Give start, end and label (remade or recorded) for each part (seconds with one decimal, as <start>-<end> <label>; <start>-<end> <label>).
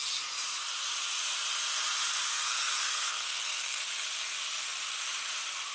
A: 0.0-2.3 recorded; 2.3-3.8 remade; 3.8-5.7 recorded